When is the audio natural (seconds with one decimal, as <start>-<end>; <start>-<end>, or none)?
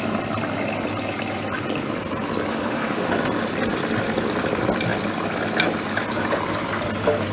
0.0-2.5; 3.1-7.3